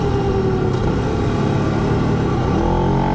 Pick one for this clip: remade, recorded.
recorded